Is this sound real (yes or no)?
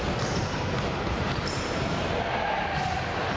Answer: no